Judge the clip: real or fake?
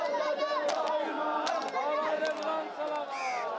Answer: real